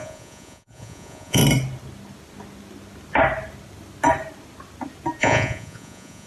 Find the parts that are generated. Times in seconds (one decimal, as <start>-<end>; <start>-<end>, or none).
0.0-1.4; 5.2-6.3